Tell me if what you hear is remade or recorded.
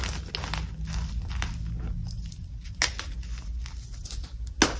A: recorded